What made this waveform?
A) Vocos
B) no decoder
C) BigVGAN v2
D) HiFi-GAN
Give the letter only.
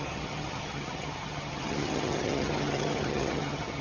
D